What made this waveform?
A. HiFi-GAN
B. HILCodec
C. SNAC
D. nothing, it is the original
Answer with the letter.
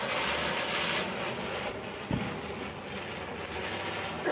D